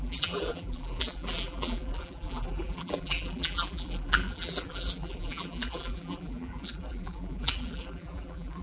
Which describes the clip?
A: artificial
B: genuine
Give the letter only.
A